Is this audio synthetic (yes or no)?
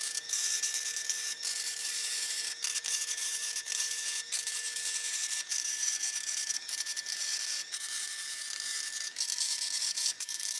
yes